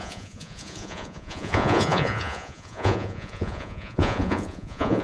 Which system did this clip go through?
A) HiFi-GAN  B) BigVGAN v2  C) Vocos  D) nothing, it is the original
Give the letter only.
C